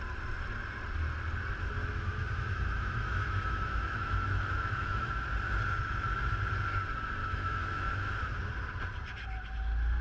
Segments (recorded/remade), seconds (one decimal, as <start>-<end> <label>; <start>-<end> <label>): 0.0-1.8 recorded; 1.8-5.1 remade; 5.1-7.2 recorded; 7.2-8.1 remade; 8.1-10.0 recorded